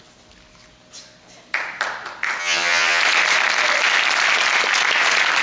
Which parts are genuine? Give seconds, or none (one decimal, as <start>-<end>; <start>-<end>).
0.0-2.4; 3.0-5.4